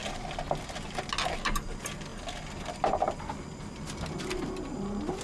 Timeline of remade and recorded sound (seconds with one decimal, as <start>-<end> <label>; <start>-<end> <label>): 0.0-5.2 recorded